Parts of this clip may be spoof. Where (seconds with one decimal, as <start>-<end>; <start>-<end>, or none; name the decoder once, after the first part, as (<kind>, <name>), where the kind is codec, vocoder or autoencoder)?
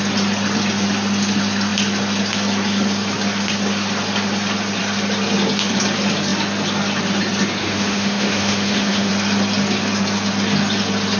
7.6-9.1 (autoencoder, DAC-VAE)